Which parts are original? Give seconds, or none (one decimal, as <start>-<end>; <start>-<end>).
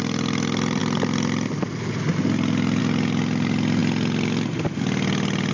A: 0.0-5.5